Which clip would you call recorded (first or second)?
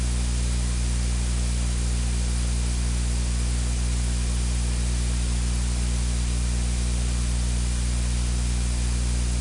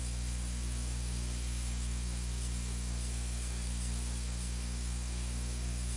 first